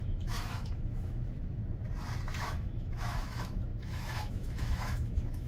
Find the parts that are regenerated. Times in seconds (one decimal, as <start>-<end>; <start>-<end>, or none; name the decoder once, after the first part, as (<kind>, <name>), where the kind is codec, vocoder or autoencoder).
0.0-1.6 (autoencoder, DAC-VAE); 2.4-5.5